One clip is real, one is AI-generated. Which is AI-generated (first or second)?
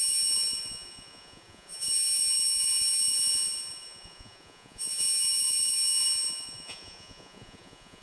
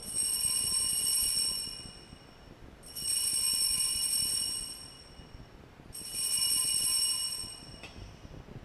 first